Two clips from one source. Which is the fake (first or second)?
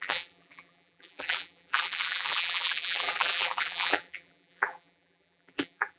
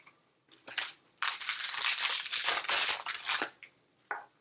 first